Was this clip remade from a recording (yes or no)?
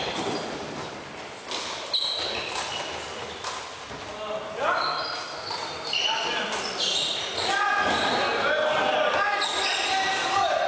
no